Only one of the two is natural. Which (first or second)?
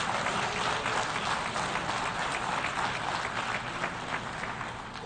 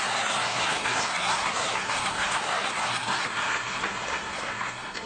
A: first